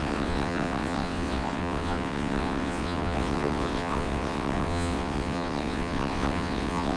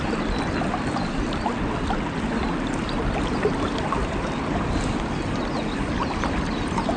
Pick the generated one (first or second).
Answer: first